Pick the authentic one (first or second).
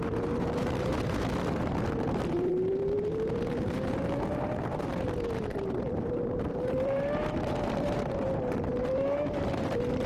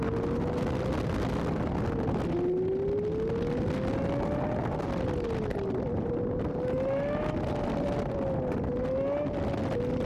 second